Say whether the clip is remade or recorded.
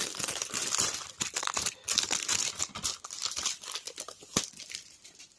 remade